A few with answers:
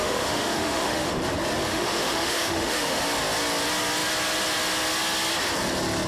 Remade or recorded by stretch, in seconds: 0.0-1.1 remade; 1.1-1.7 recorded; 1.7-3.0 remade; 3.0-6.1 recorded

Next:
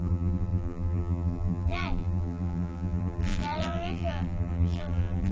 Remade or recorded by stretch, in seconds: 0.0-5.3 remade